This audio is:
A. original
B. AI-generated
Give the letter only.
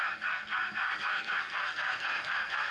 B